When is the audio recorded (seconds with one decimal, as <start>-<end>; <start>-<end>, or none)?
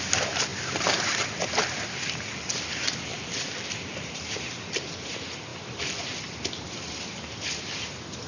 0.0-0.5; 1.3-3.1; 4.1-5.5; 7.4-8.3